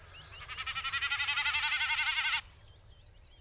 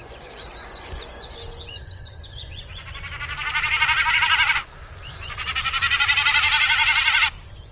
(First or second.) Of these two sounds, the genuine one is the first